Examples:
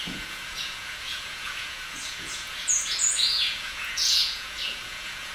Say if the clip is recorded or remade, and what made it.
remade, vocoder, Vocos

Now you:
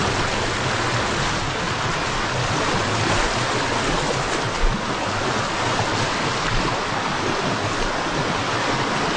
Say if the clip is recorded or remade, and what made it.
recorded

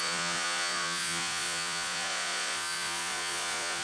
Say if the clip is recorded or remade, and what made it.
remade, vocoder, Vocos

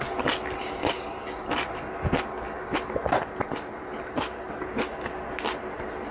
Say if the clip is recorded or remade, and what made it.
recorded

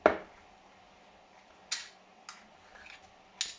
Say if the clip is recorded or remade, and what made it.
recorded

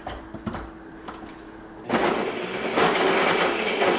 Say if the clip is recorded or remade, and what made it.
recorded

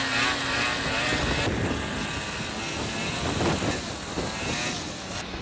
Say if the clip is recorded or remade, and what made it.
recorded